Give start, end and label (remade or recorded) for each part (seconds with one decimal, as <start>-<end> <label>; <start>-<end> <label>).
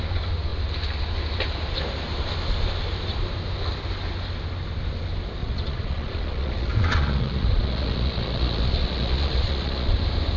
0.0-5.4 recorded; 5.4-10.0 remade; 10.0-10.4 recorded